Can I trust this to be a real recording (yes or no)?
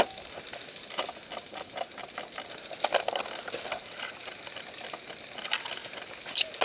yes